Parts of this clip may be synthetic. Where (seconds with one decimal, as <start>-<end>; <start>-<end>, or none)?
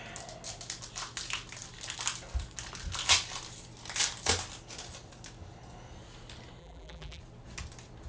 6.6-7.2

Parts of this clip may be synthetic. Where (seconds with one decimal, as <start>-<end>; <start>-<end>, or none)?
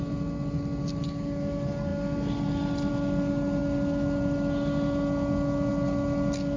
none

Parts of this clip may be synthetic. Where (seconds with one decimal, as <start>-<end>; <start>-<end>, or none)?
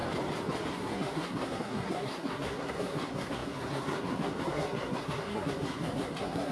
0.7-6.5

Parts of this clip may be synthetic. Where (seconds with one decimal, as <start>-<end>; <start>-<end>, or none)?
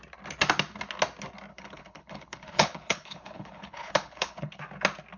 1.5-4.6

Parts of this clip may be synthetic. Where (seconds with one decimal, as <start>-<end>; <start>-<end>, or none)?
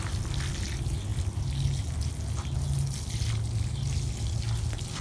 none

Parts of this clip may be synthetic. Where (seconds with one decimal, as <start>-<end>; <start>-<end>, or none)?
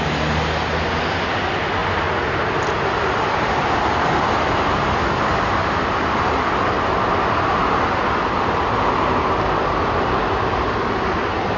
none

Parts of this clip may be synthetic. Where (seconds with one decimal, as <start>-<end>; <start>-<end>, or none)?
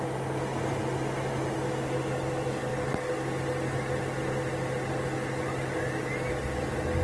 none